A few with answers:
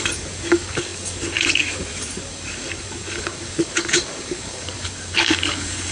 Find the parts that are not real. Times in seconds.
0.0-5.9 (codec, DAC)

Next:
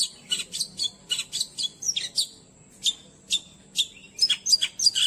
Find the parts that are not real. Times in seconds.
none

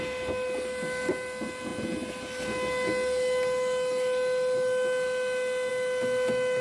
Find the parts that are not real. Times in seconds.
none

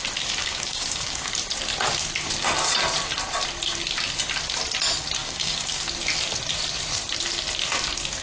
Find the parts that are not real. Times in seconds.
0.4-1.3 (codec, DAC); 5.2-5.8